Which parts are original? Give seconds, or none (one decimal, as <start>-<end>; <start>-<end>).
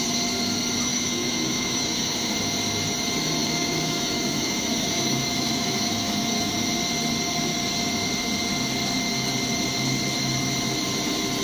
0.0-0.9; 2.3-3.4; 6.5-11.4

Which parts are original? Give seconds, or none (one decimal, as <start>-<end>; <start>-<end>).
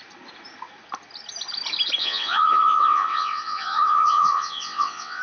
0.0-2.0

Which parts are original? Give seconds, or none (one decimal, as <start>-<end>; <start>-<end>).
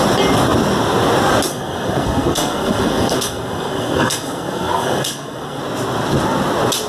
0.0-1.5; 5.6-6.9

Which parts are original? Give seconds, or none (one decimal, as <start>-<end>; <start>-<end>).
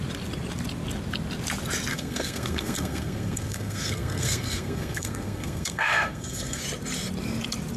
0.0-1.9; 6.6-7.8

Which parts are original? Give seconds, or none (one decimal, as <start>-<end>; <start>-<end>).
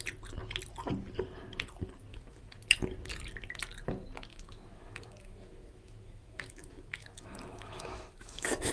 0.0-2.1; 2.6-4.3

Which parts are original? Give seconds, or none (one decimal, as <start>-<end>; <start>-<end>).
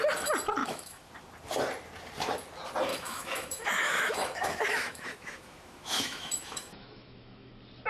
0.0-0.6; 1.1-2.9; 7.5-7.9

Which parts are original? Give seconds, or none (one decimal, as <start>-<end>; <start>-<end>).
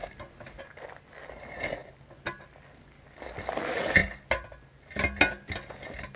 0.0-6.2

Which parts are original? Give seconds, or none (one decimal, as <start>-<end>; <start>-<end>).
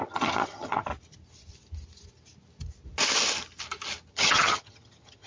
0.9-4.1